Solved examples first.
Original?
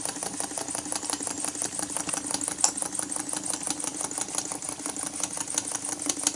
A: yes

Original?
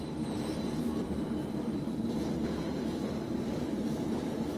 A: no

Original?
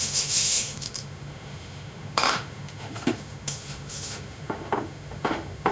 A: no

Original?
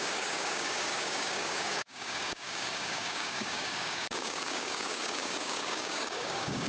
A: no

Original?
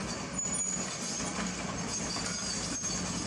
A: yes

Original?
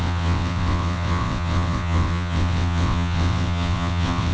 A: no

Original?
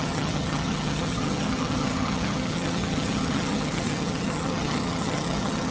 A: no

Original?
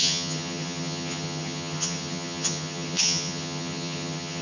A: no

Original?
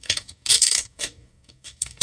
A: no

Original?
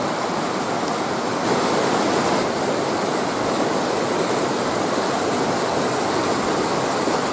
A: yes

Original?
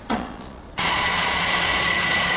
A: no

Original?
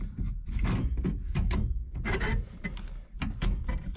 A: yes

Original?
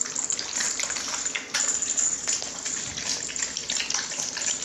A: yes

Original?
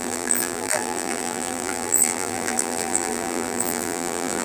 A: no